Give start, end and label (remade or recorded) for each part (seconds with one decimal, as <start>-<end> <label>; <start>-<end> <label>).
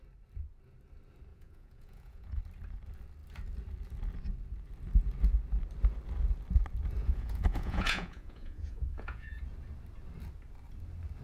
0.0-1.3 recorded; 1.3-2.4 remade; 2.4-7.0 recorded; 7.0-9.4 remade; 9.4-11.2 recorded